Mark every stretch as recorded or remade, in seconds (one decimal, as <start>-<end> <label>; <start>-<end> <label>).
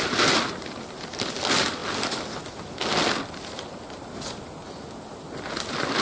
0.0-6.0 recorded